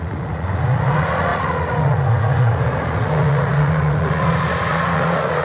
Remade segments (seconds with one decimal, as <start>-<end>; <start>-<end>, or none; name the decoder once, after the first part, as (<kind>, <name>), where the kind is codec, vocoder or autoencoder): 0.0-5.4 (vocoder, Vocos)